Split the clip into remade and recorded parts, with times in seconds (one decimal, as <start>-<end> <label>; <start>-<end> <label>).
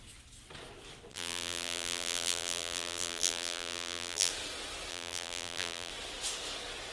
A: 0.0-1.1 recorded; 1.1-4.3 remade; 4.3-4.9 recorded; 4.9-5.9 remade; 5.9-6.9 recorded